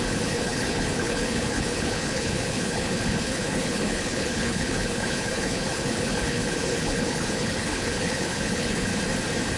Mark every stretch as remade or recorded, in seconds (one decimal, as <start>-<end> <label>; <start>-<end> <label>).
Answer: 0.0-8.9 remade; 8.9-9.6 recorded